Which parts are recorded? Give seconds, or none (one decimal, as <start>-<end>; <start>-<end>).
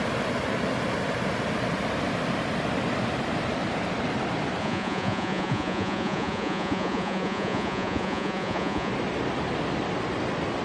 0.0-4.6; 8.9-10.6